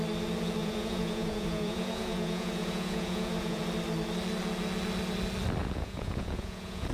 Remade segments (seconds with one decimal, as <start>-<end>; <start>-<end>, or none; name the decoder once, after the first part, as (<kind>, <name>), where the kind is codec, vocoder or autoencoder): 0.6-3.6 (vocoder, Vocos); 5.6-6.9